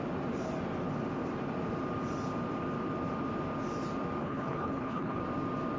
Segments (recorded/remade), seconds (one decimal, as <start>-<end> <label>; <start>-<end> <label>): 0.0-4.2 recorded; 4.2-5.2 remade; 5.2-5.8 recorded